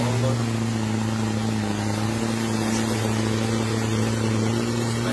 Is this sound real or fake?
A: real